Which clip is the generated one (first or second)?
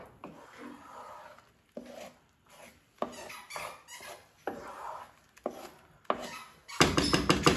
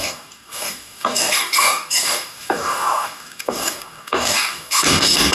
second